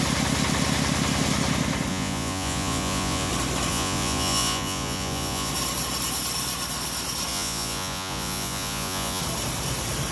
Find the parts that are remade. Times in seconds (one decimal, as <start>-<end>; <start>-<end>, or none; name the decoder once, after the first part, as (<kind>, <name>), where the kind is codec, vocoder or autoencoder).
1.9-3.3 (vocoder, Vocos); 3.7-5.5; 7.3-9.2